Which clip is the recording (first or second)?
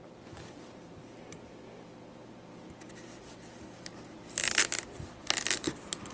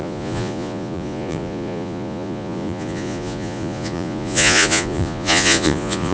first